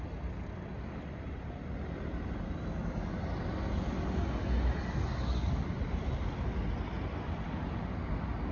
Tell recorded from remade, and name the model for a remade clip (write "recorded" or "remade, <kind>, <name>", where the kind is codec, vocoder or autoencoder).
recorded